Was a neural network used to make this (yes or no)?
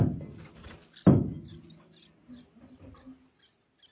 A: no